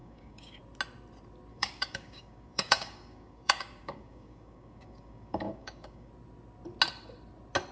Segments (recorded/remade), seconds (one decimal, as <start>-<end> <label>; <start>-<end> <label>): 0.0-0.6 remade; 0.6-1.5 recorded; 1.5-6.1 remade; 6.1-7.7 recorded